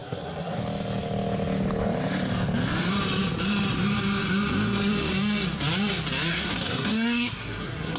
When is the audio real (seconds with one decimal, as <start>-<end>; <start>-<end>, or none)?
0.6-6.3